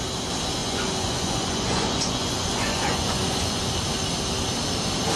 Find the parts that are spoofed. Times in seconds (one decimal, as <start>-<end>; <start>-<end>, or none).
0.6-3.7

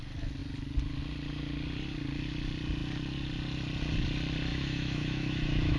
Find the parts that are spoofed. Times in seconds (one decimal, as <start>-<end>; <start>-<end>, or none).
4.5-5.8

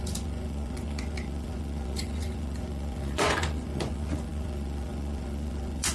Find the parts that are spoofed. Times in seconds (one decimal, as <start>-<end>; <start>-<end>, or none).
0.0-5.9

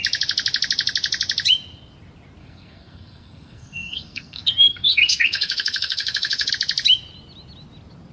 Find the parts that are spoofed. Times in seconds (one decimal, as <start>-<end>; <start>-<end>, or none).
2.4-6.5